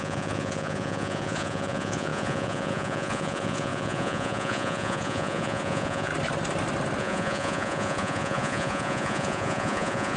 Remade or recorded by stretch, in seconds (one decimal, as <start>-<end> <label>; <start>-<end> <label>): 0.0-6.1 remade; 6.1-7.0 recorded; 7.0-10.2 remade